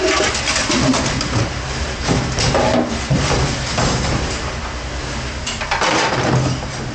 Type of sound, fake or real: real